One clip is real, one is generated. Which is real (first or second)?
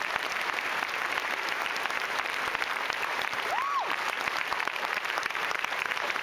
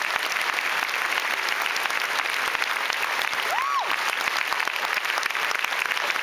second